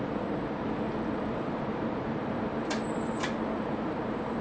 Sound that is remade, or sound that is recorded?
remade